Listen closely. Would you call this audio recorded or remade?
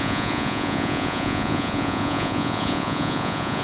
remade